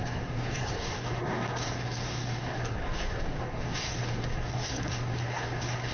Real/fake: fake